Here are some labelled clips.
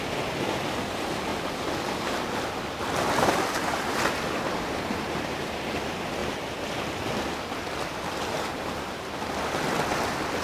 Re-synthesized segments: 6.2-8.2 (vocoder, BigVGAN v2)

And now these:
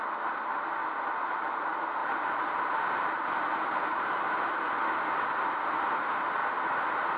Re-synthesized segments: 2.0-4.5 (vocoder, BigVGAN v2)

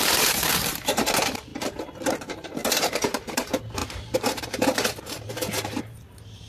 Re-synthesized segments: 0.0-1.5 (vocoder, BigVGAN v2); 2.1-6.5

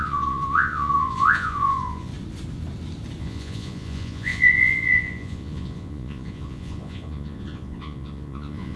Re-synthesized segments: 0.0-2.1 (vocoder, Vocos); 3.2-8.8